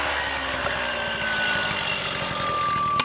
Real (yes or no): yes